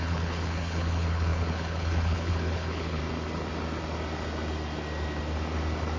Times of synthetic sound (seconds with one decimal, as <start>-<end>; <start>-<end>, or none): 0.0-3.0